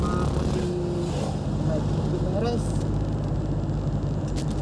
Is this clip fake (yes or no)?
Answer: no